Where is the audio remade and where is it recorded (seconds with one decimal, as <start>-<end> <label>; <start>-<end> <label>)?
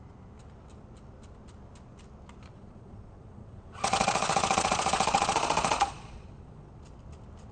0.0-2.5 recorded; 2.5-6.8 remade; 6.8-7.5 recorded